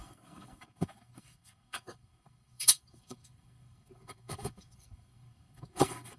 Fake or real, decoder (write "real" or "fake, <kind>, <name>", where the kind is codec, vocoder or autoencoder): fake, codec, SNAC